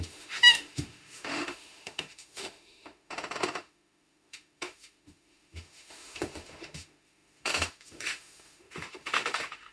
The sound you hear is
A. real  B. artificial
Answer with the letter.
B